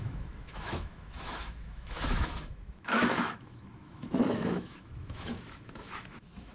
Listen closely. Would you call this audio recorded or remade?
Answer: remade